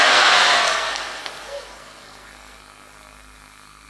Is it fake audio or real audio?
fake